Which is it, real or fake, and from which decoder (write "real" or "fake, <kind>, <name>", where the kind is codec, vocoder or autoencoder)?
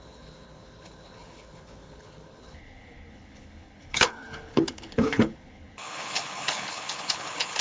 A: fake, codec, HILCodec